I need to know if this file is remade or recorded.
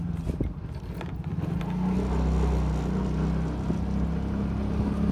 recorded